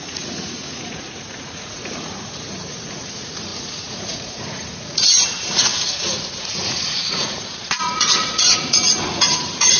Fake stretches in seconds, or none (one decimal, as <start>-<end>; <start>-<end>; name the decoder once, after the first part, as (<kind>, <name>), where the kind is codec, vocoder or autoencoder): 0.0-9.8 (vocoder, Vocos)